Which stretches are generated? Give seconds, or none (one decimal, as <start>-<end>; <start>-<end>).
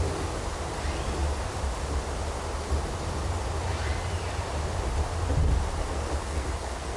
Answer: 5.8-7.0